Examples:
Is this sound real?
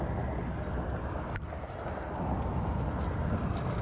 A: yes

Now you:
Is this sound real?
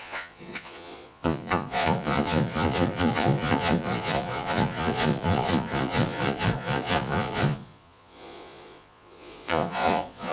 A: no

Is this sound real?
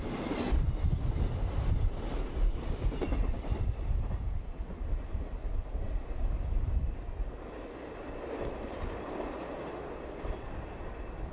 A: yes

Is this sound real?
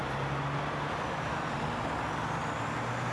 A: yes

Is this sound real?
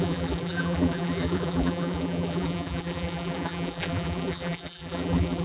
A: no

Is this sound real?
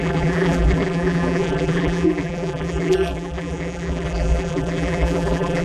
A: no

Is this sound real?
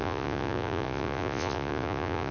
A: no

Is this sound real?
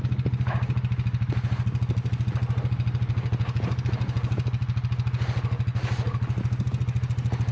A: yes